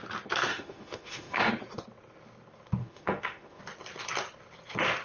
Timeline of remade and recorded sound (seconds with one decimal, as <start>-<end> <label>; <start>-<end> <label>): 0.0-0.5 recorded; 0.5-1.5 remade; 1.5-2.8 recorded; 2.8-3.6 remade; 3.6-5.0 recorded